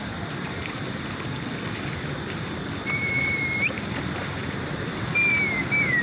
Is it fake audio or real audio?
fake